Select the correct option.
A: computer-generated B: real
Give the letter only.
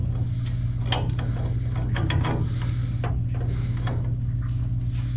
B